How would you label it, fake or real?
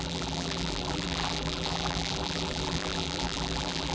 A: fake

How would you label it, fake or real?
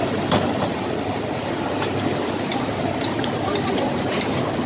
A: fake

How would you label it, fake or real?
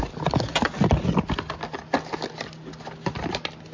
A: real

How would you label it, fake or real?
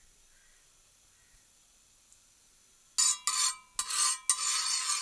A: real